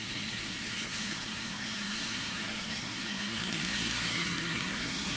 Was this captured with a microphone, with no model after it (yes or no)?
no